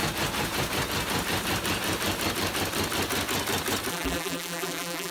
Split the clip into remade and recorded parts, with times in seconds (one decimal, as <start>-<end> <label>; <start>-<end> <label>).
0.0-3.9 recorded; 3.9-5.1 remade

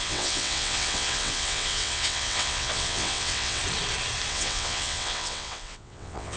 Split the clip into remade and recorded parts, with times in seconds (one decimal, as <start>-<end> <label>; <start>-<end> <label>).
0.0-3.6 remade; 3.6-4.3 recorded; 4.3-6.4 remade